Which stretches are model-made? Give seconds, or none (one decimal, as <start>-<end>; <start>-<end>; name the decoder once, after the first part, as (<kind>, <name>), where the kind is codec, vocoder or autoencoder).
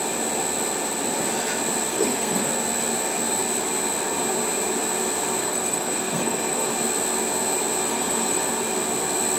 1.9-2.5 (codec, SNAC); 5.4-6.7; 7.9-8.4